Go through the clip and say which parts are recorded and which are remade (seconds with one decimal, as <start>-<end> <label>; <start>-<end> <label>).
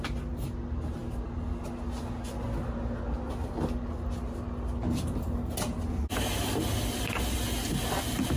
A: 0.0-8.4 recorded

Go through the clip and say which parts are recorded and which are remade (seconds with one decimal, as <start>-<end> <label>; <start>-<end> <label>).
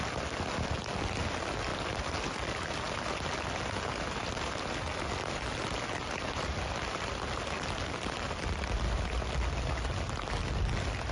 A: 0.0-1.7 recorded; 1.7-2.5 remade; 2.5-11.1 recorded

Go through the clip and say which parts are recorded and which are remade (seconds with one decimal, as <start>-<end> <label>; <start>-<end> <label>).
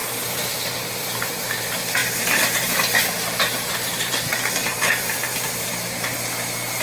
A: 0.0-1.6 remade; 1.6-2.0 recorded; 2.0-4.1 remade; 4.1-4.6 recorded; 4.6-5.7 remade; 5.7-6.8 recorded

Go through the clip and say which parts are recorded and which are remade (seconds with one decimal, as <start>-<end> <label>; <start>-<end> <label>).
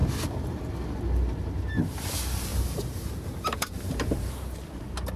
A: 0.0-2.5 recorded; 2.5-4.3 remade; 4.3-5.2 recorded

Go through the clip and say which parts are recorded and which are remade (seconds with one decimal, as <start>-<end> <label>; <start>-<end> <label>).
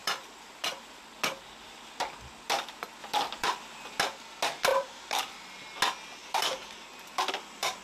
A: 0.0-1.0 remade; 1.0-3.0 recorded; 3.0-4.0 remade; 4.0-4.7 recorded; 4.7-5.2 remade; 5.2-6.2 recorded; 6.2-7.8 remade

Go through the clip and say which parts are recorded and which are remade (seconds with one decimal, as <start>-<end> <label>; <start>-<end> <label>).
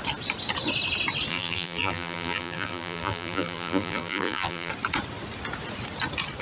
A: 0.0-1.3 recorded; 1.3-4.7 remade; 4.7-6.4 recorded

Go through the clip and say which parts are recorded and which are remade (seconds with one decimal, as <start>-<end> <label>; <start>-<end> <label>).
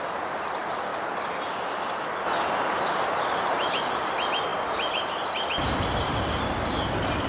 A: 0.0-0.9 recorded; 0.9-2.5 remade; 2.5-4.5 recorded; 4.5-6.4 remade; 6.4-7.3 recorded